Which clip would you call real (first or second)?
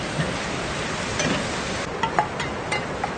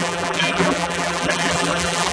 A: first